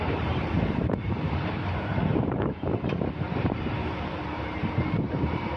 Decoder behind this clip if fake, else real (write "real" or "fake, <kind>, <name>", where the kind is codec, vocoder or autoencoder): fake, vocoder, BigVGAN v2